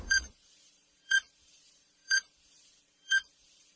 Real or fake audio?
fake